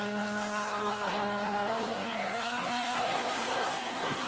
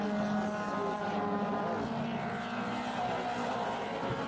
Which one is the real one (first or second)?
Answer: second